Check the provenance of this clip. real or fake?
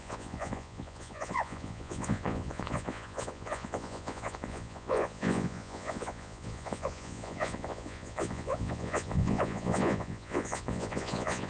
fake